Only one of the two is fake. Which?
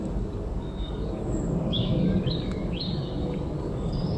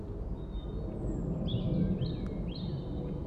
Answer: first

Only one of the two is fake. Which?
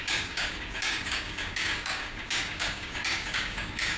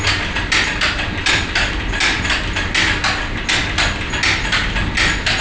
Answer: first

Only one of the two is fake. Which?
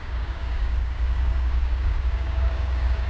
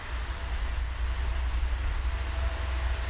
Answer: first